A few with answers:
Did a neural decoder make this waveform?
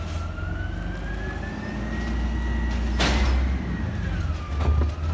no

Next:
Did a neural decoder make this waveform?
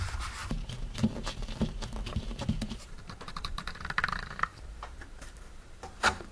yes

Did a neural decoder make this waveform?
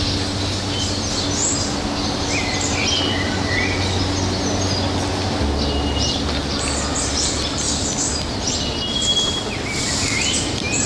no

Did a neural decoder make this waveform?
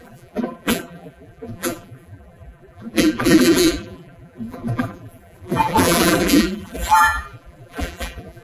yes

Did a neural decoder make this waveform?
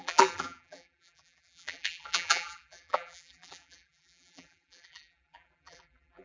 yes